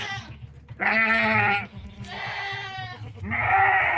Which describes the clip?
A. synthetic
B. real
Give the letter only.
B